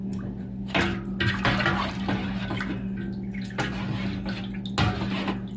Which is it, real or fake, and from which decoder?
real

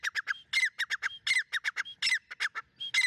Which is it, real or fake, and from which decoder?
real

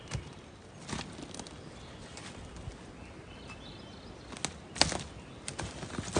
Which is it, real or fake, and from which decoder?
real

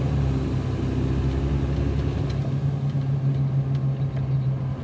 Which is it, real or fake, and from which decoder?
real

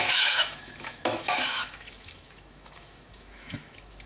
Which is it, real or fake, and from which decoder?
fake, autoencoder, DAC-VAE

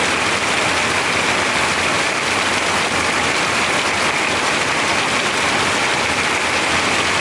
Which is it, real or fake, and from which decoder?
real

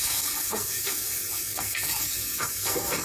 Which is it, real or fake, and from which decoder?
fake, codec, SNAC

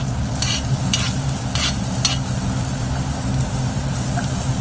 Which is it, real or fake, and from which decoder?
real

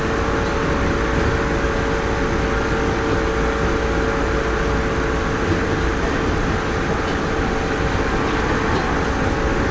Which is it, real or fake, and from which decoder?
real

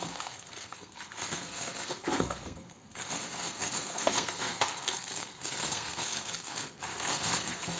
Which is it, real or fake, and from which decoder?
fake, codec, SNAC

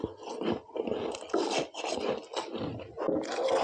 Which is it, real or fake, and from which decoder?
real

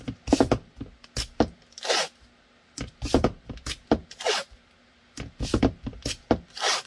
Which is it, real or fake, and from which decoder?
real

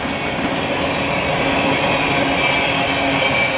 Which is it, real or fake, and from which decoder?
real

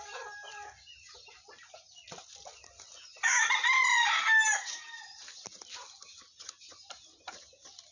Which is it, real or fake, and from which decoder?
real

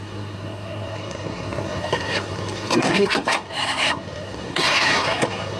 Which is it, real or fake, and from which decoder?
fake, codec, SNAC